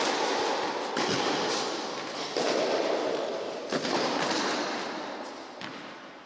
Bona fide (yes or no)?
yes